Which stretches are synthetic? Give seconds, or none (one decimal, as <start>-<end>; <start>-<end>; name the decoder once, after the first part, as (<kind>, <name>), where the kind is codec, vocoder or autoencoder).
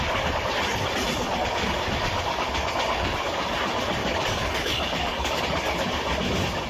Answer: 4.0-5.4 (codec, DAC)